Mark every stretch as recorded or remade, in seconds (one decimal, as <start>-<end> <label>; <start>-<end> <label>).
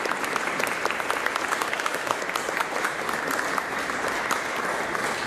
0.0-1.5 recorded; 1.5-2.2 remade; 2.2-5.3 recorded